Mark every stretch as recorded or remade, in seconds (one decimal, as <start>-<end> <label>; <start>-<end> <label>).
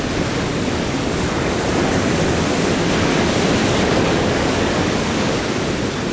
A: 0.0-0.5 recorded; 0.5-1.6 remade; 1.6-3.6 recorded; 3.6-5.4 remade; 5.4-6.1 recorded